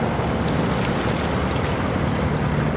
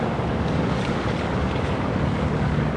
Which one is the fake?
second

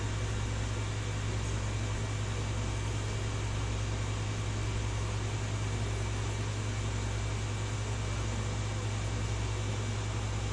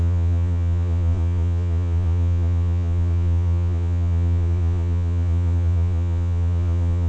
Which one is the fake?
second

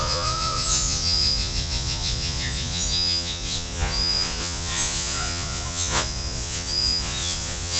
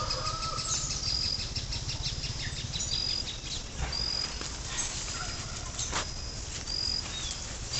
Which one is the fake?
first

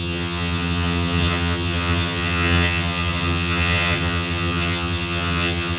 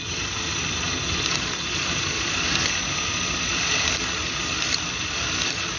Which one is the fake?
first